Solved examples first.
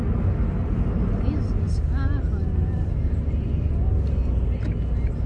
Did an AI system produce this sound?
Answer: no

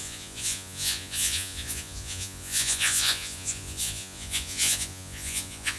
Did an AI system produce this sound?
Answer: yes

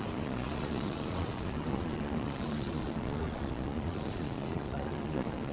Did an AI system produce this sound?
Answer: yes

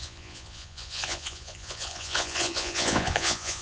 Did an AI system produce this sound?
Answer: yes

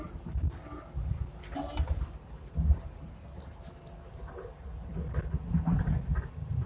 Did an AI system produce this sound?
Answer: no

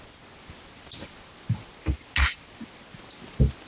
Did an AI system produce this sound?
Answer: no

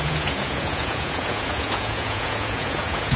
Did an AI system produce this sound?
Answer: yes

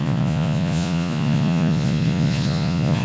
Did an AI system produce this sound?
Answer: yes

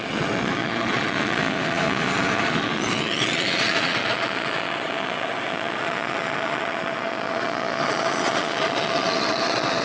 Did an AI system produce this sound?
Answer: yes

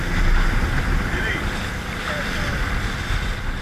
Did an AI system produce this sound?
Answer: no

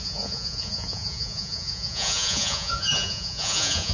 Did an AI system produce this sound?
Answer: yes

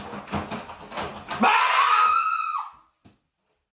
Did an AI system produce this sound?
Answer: no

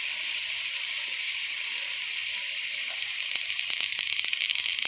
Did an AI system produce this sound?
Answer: no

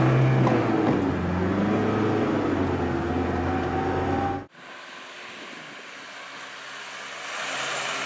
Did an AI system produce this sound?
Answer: no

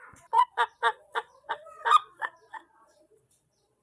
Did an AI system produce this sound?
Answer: yes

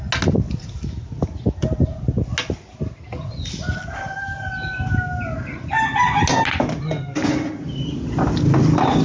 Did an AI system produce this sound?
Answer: no